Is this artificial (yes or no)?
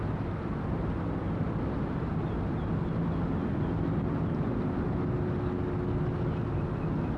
no